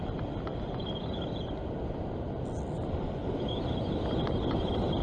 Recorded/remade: recorded